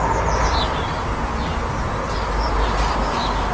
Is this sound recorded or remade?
recorded